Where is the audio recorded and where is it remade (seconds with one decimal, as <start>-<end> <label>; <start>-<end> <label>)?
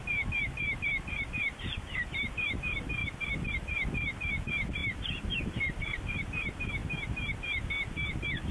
0.0-8.5 recorded